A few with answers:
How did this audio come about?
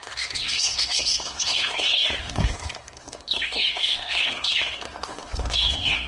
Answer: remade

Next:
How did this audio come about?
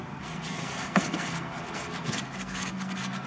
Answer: remade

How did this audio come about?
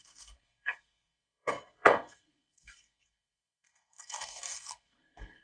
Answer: remade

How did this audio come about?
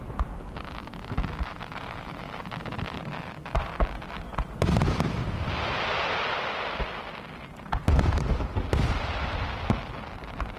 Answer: recorded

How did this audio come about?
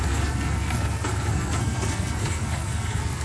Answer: remade